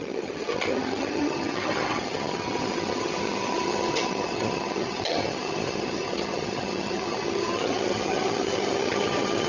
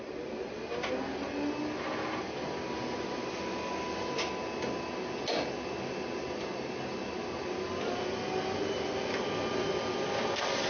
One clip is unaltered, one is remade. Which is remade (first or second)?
first